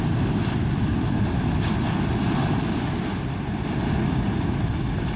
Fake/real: real